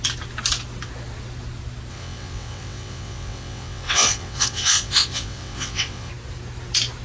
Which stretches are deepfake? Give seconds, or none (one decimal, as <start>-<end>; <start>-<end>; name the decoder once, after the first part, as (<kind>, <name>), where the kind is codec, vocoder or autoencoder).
1.9-6.1 (vocoder, WaveNeXt)